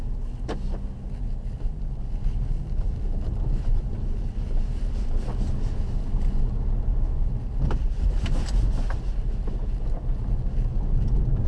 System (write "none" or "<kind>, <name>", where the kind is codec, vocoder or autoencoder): none